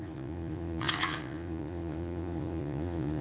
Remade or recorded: remade